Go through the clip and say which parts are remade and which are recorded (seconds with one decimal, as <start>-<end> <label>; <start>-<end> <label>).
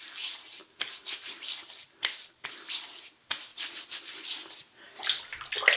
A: 0.0-0.6 recorded; 0.6-1.7 remade; 1.7-3.5 recorded; 3.5-5.0 remade; 5.0-5.8 recorded